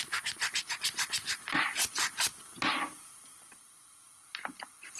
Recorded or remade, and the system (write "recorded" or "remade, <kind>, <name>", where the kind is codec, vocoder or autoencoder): recorded